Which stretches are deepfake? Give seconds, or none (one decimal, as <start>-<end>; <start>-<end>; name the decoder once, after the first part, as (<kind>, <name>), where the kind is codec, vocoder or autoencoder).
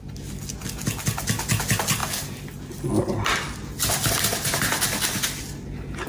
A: none